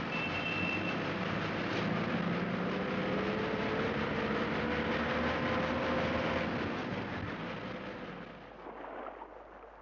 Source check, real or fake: real